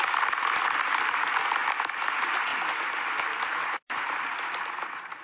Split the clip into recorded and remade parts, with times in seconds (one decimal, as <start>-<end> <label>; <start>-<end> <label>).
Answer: 0.0-5.2 recorded